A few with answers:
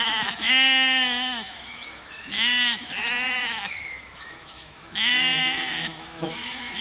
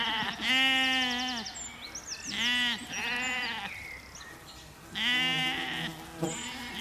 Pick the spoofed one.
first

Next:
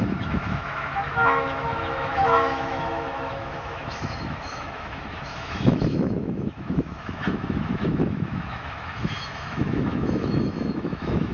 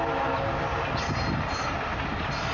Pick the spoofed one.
first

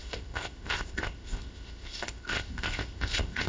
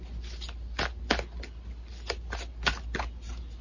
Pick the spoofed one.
first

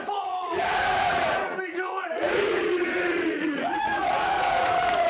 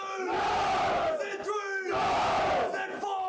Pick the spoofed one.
first